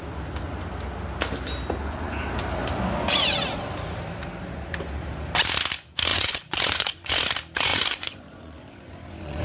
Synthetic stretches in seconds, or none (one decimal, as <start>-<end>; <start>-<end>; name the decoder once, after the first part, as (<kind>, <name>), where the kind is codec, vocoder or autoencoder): 1.8-2.3 (vocoder, Vocos); 6.1-7.1; 7.7-9.4